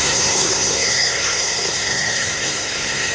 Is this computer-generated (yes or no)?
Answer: yes